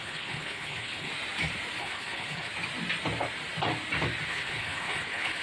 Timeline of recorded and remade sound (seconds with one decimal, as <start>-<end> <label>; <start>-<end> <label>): 0.0-1.1 remade; 1.1-1.8 recorded; 1.8-2.5 remade; 2.5-4.3 recorded; 4.3-5.4 remade